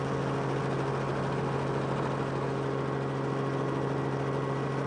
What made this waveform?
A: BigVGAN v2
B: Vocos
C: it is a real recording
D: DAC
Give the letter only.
C